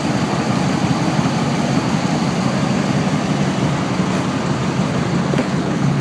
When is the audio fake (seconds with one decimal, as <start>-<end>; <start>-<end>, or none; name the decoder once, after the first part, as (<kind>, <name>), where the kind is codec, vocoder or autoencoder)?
5.4-6.0 (codec, HILCodec)